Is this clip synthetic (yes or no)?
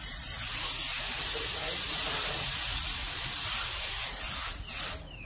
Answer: no